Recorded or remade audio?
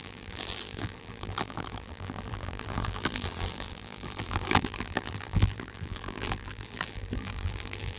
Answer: remade